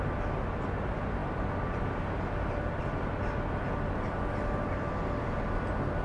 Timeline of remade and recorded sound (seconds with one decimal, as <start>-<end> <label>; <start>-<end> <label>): 0.0-6.0 recorded